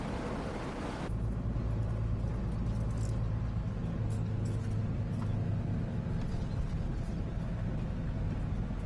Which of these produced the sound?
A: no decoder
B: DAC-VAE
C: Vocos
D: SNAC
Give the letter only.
A